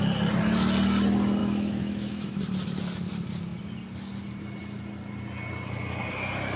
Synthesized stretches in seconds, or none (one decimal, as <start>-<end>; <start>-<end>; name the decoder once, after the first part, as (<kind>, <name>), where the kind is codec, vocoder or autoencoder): 1.4-2.4 (autoencoder, DAC-VAE)